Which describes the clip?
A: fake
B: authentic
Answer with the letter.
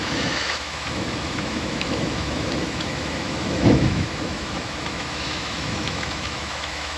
A